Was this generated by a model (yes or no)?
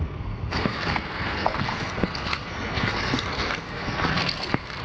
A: yes